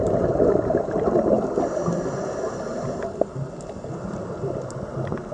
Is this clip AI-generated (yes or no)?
no